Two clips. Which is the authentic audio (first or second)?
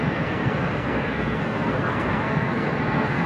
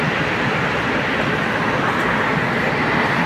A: second